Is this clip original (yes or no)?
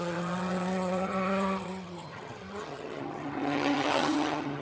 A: no